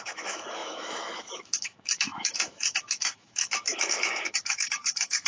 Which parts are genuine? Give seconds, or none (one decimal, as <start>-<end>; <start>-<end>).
none